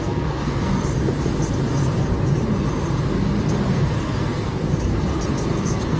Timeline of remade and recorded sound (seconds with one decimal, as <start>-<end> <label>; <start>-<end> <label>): 0.0-0.7 remade; 0.7-3.7 recorded; 3.7-4.7 remade; 4.7-5.4 recorded; 5.4-6.0 remade